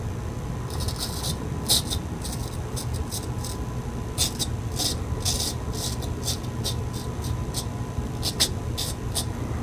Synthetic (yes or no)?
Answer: no